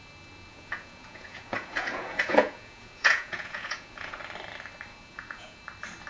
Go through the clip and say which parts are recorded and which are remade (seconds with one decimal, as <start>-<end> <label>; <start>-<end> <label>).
0.0-0.5 recorded; 0.5-4.2 remade; 4.2-4.9 recorded; 4.9-5.6 remade; 5.6-6.1 recorded